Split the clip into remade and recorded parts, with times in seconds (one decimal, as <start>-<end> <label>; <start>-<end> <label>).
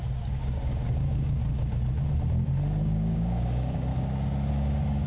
0.0-1.4 remade; 1.4-2.8 recorded; 2.8-3.9 remade; 3.9-4.5 recorded; 4.5-5.1 remade